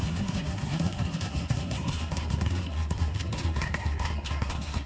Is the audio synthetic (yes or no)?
yes